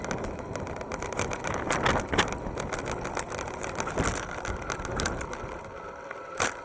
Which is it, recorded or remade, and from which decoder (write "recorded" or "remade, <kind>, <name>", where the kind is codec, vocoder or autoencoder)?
recorded